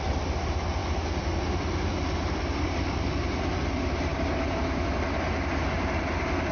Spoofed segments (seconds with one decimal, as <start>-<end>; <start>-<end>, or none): none